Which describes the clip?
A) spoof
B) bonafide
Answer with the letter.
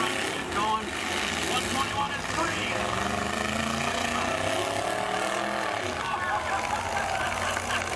B